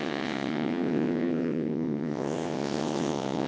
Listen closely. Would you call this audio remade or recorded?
remade